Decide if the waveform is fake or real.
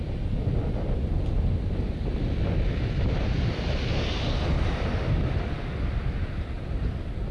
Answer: real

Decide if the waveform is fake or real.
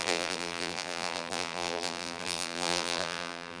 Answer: fake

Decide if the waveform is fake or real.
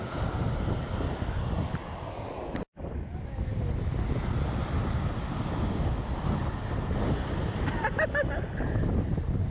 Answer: real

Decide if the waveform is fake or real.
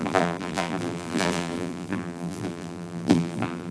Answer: fake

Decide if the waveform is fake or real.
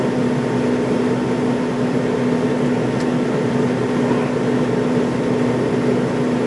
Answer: fake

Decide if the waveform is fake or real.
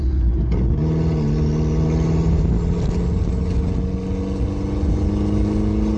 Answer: real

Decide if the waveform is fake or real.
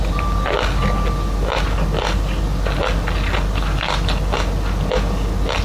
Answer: real